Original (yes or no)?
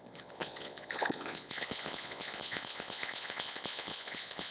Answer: no